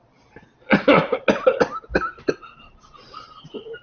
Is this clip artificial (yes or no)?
no